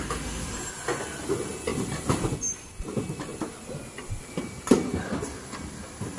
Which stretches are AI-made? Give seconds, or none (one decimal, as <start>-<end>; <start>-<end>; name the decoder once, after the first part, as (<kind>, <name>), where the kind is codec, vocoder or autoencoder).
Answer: 1.7-2.3 (vocoder, BigVGAN v2); 3.3-5.0